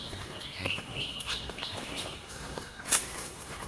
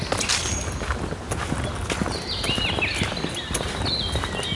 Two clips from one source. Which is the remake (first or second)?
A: first